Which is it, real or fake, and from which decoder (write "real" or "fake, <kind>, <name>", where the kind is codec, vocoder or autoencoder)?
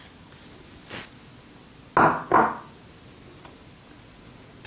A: real